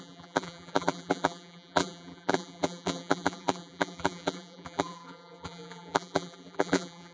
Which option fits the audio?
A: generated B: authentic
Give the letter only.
A